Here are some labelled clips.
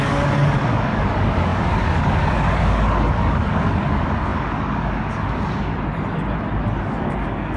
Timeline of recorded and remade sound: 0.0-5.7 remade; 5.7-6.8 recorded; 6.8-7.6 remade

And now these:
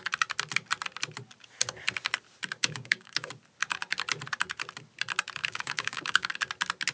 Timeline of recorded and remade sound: 0.0-2.6 recorded; 2.6-3.3 remade; 3.3-5.4 recorded; 5.4-6.3 remade; 6.3-6.9 recorded

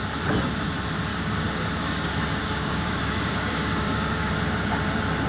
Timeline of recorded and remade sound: 0.0-1.1 recorded; 1.1-4.3 remade; 4.3-5.3 recorded